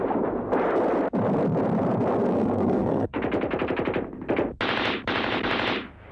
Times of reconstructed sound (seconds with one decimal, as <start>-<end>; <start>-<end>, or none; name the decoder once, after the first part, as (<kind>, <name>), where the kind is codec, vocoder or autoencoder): 2.2-3.2 (codec, SNAC)